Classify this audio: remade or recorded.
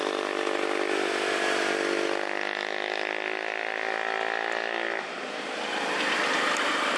recorded